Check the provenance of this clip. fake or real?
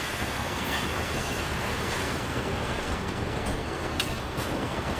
fake